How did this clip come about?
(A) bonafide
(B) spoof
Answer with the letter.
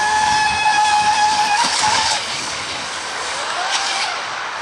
B